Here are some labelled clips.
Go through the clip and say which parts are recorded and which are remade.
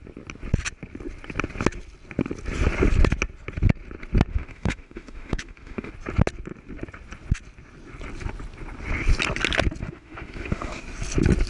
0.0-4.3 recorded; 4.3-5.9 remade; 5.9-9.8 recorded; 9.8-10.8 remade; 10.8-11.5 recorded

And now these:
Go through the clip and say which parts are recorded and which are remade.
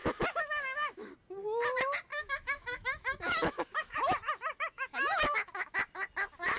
0.0-1.1 remade; 1.1-2.1 recorded; 2.1-5.8 remade; 5.8-6.6 recorded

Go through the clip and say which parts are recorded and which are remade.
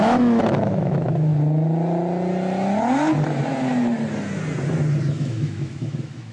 0.0-1.3 remade; 1.3-5.1 recorded; 5.1-6.3 remade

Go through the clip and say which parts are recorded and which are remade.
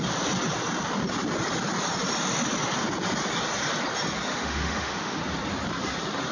0.0-4.3 recorded; 4.3-5.2 remade; 5.2-6.3 recorded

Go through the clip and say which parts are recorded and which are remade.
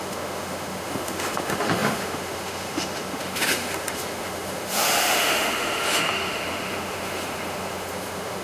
0.0-8.4 remade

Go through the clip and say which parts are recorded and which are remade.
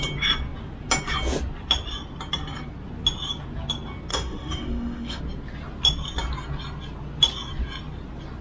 0.0-4.1 recorded; 4.1-5.2 remade; 5.2-8.4 recorded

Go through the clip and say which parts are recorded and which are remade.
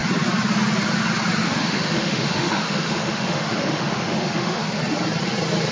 0.0-1.4 recorded; 1.4-4.8 remade; 4.8-5.7 recorded